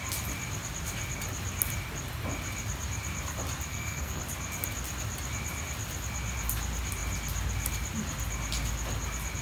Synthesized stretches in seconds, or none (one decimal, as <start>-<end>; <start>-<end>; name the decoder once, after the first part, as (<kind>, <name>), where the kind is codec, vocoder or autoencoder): 3.7-4.2 (codec, SNAC)